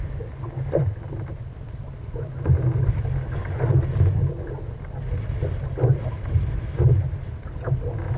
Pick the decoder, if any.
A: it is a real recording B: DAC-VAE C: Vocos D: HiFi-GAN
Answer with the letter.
A